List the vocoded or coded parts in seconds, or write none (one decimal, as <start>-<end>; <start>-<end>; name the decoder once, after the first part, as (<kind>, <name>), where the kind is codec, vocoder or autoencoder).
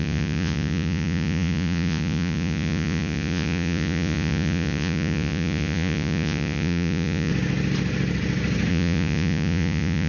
0.0-7.3 (vocoder, Vocos); 8.7-10.1